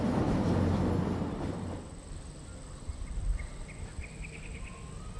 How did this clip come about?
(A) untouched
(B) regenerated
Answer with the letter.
A